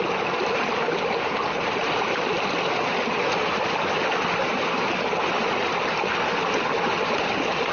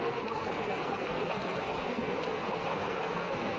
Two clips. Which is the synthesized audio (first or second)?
second